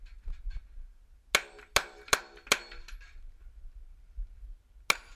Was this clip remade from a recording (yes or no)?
no